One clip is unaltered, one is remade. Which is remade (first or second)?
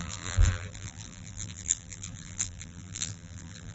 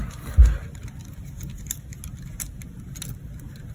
first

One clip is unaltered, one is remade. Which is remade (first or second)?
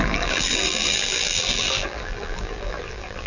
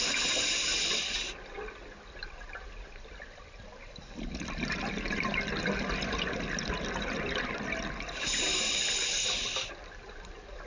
first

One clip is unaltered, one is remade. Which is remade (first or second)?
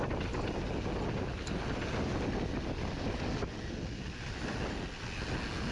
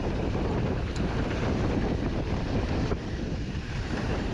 second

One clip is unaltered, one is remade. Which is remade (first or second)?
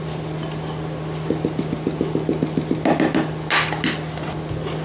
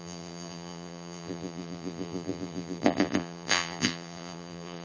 second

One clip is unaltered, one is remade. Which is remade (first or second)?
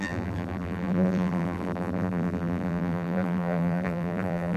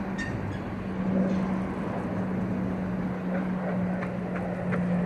first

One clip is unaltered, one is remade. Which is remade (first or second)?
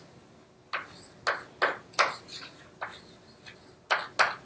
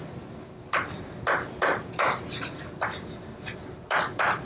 second